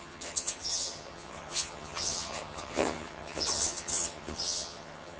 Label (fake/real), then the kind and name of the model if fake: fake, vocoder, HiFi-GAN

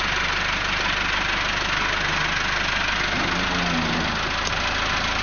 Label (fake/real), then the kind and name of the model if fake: real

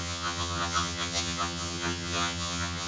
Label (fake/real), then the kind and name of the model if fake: fake, vocoder, HiFi-GAN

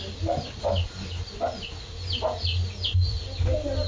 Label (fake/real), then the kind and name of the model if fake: real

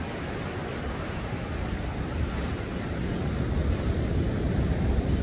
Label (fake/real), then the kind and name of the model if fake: real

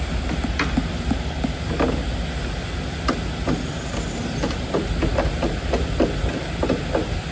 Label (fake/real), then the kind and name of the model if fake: real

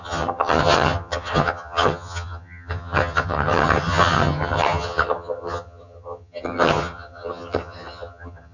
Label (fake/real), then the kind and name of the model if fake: fake, vocoder, HiFi-GAN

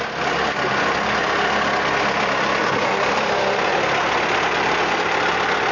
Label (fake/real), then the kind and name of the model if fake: real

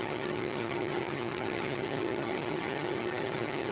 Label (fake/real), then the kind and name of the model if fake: fake, vocoder, HiFi-GAN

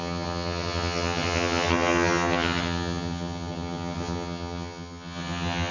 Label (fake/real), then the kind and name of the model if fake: fake, vocoder, HiFi-GAN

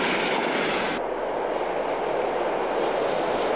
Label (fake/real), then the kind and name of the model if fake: real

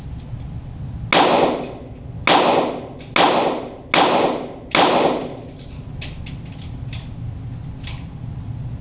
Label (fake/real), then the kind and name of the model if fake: real